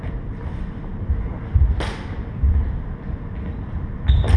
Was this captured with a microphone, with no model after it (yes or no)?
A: yes